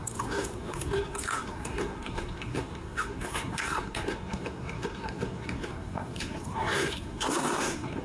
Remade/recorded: remade